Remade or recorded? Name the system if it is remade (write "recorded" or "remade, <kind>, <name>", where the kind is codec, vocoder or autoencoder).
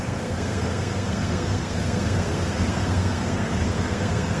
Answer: remade, codec, SNAC